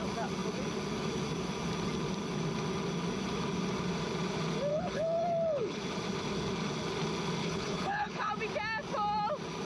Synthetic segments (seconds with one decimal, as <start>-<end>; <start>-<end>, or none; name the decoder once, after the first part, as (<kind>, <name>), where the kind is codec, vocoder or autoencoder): 4.7-5.8 (codec, HILCodec); 7.4-8.3